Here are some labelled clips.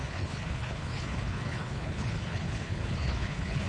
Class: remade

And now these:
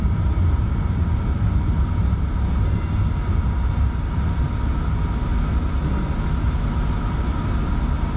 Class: recorded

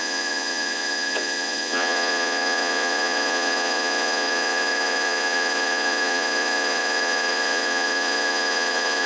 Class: remade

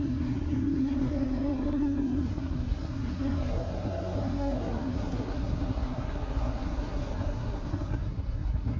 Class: remade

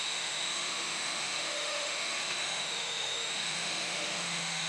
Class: remade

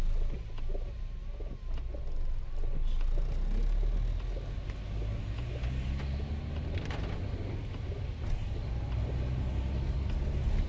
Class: recorded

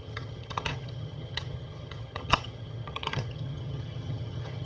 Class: remade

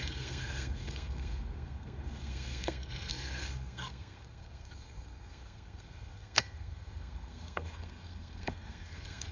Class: remade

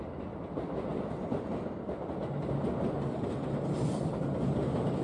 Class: recorded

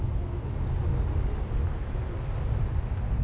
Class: recorded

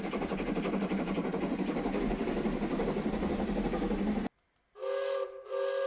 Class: recorded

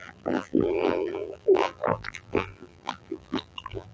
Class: remade